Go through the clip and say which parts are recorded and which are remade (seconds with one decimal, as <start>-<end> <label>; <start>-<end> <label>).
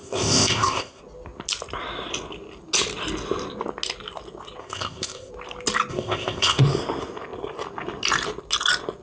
0.0-1.0 remade; 1.0-4.6 recorded; 4.6-5.3 remade; 5.3-5.9 recorded; 5.9-6.6 remade; 6.6-9.0 recorded